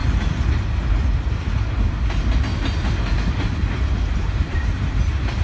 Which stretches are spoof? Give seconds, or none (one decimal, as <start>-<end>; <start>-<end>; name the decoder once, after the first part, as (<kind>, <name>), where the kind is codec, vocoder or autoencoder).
3.4-4.6 (vocoder, BigVGAN v2)